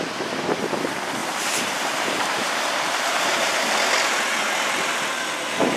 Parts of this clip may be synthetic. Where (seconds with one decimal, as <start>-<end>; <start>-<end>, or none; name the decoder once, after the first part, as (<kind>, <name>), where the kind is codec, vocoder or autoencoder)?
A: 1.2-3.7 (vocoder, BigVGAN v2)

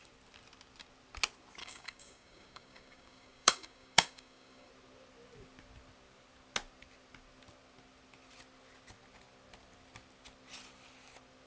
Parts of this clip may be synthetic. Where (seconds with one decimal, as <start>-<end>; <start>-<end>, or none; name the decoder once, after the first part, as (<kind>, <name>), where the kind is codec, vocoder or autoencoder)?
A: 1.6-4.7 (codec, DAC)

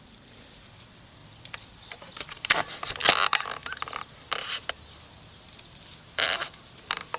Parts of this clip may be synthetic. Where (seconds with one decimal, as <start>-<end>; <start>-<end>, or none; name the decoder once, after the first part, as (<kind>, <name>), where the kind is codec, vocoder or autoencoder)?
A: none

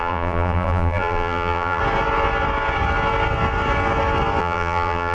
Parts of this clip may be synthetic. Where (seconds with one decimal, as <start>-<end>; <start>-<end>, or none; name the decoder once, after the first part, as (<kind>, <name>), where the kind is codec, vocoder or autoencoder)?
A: 0.0-1.8 (vocoder, BigVGAN v2); 4.4-5.1

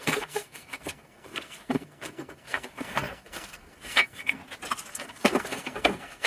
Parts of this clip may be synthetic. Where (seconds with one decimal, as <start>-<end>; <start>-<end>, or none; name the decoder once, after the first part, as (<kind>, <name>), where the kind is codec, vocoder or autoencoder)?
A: 0.0-4.4 (codec, SNAC); 4.9-6.3

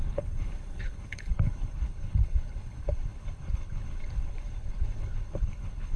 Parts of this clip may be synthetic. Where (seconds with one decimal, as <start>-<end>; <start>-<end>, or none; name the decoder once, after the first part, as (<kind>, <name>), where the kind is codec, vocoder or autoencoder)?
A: 0.0-6.0 (codec, HILCodec)

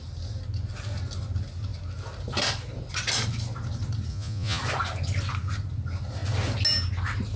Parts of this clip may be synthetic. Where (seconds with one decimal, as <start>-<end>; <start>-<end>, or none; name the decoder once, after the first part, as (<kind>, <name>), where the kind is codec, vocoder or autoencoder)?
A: 4.1-4.6 (vocoder, Vocos)

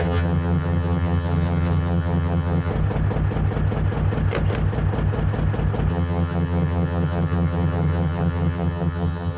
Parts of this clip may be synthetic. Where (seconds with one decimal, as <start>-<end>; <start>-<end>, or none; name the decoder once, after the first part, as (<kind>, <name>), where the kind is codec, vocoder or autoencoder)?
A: 0.0-2.7 (vocoder, HiFi-GAN); 5.9-9.4